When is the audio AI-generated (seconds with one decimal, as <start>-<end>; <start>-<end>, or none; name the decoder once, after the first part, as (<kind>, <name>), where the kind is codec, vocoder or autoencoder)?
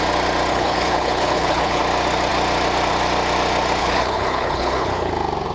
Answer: 0.5-1.8 (codec, HILCodec); 3.8-5.1